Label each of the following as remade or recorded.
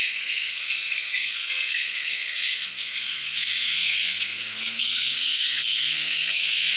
remade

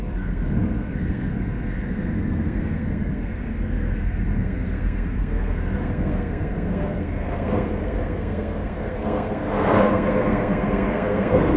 remade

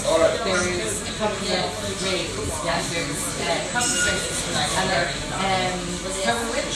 recorded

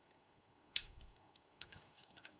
remade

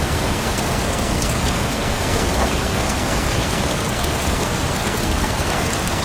remade